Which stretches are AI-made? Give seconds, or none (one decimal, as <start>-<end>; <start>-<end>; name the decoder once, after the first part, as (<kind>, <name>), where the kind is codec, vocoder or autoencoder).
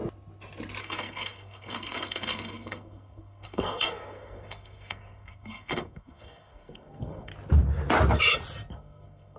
0.8-7.3 (codec, SNAC); 8.7-9.4